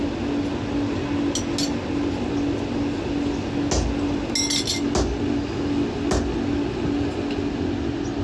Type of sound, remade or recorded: recorded